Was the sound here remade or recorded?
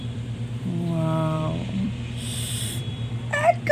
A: remade